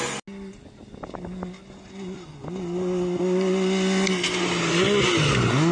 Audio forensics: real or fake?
real